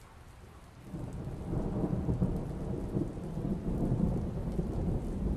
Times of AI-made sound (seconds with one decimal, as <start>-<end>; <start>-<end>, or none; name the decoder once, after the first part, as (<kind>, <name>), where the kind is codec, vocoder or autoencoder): none